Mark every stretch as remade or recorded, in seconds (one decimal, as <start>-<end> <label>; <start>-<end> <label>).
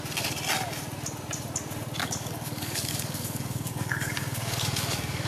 0.0-2.0 recorded; 2.0-5.3 remade